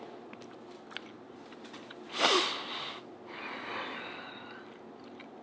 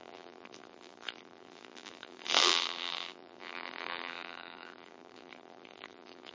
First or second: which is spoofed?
second